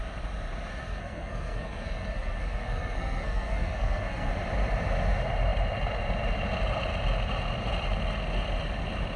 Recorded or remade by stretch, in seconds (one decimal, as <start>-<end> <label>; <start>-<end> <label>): 0.0-0.8 recorded; 0.8-4.3 remade; 4.3-9.2 recorded